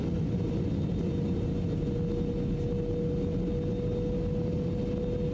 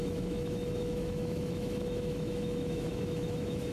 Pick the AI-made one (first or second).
second